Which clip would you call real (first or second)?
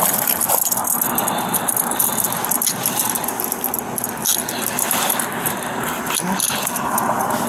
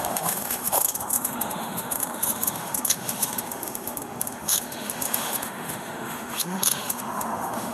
first